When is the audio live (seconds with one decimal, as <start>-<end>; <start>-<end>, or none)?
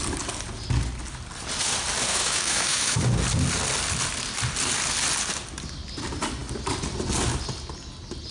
0.0-2.1; 3.0-8.3